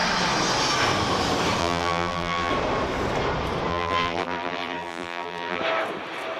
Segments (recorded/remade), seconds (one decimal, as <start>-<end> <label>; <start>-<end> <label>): 0.0-1.6 recorded; 1.6-2.5 remade; 2.5-3.7 recorded; 3.7-5.6 remade; 5.6-6.4 recorded